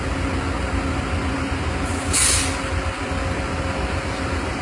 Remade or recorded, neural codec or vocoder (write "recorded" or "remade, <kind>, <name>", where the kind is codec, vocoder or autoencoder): recorded